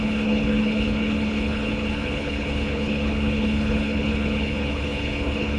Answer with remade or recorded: remade